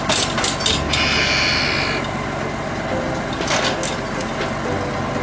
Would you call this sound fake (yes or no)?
no